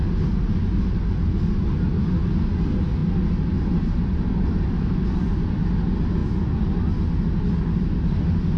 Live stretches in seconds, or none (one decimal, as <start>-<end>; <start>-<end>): 0.0-8.6